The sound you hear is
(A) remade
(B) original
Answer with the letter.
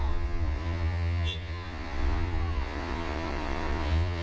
A